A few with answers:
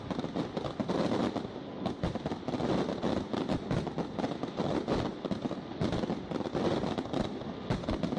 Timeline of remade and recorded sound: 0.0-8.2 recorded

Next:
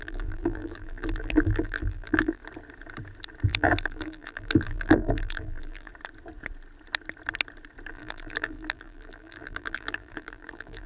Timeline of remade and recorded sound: 0.0-2.4 remade; 2.4-3.5 recorded; 3.5-5.9 remade; 5.9-7.9 recorded; 7.9-10.9 remade

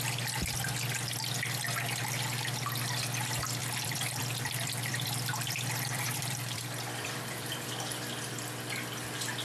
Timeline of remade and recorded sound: 0.0-3.6 recorded; 3.6-7.8 remade; 7.8-9.4 recorded

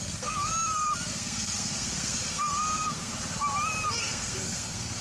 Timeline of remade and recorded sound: 0.0-0.5 remade; 0.5-1.1 recorded; 1.1-3.1 remade; 3.1-4.0 recorded; 4.0-5.0 remade

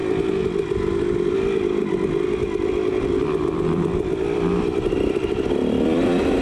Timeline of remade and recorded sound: 0.0-3.2 recorded; 3.2-6.4 remade

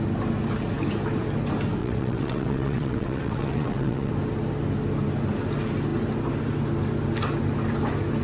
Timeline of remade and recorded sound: 0.0-1.8 recorded; 1.8-4.1 remade; 4.1-8.2 recorded